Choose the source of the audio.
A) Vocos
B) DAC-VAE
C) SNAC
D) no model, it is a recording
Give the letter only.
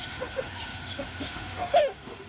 B